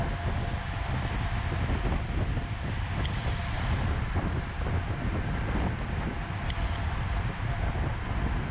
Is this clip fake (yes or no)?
no